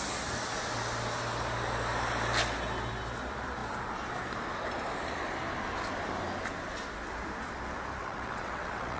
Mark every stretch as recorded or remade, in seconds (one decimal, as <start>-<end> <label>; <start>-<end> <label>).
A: 0.0-8.0 recorded; 8.0-9.0 remade